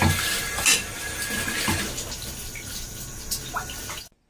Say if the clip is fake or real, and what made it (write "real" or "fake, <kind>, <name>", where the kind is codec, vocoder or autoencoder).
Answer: real